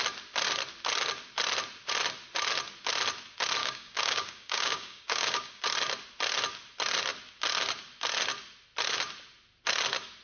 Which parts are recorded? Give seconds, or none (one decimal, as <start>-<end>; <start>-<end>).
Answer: 0.0-3.6; 5.6-10.2